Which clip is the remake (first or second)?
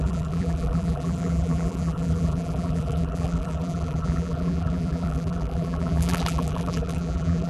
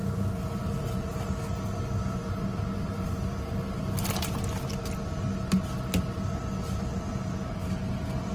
first